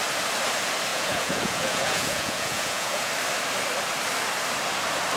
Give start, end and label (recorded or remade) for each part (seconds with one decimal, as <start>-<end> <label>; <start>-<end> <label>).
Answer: 0.0-0.9 recorded; 0.9-3.1 remade; 3.1-5.2 recorded

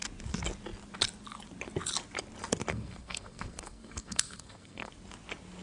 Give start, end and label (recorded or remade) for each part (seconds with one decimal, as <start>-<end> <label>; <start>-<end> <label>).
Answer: 0.0-2.7 recorded; 2.7-4.9 remade; 4.9-5.6 recorded

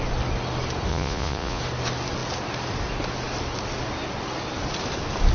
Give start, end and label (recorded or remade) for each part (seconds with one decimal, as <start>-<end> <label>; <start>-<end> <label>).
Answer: 0.0-0.9 recorded; 0.9-1.6 remade; 1.6-5.3 recorded